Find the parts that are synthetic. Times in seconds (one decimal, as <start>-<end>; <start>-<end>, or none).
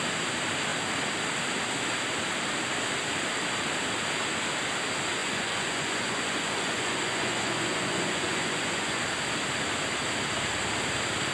5.2-9.0